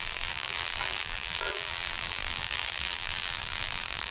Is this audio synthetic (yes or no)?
yes